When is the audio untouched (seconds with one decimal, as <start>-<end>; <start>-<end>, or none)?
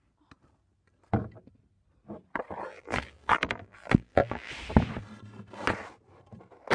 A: 0.0-2.7; 4.5-6.7